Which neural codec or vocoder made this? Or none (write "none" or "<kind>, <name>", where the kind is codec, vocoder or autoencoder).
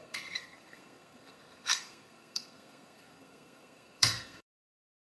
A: codec, SNAC